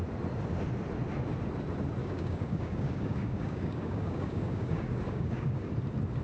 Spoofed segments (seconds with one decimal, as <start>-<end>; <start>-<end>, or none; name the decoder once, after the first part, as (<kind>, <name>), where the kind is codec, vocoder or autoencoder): 2.0-5.7 (codec, DAC)

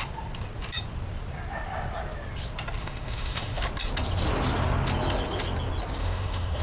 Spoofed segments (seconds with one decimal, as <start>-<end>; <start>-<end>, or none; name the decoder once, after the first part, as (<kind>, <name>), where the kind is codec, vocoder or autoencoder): 2.8-3.6 (autoencoder, DAC-VAE); 6.0-6.6

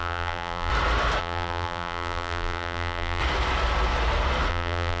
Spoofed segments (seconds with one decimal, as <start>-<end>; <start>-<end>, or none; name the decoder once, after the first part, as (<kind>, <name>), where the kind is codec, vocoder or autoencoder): 0.0-0.7 (vocoder, BigVGAN v2); 1.2-3.2; 4.5-5.0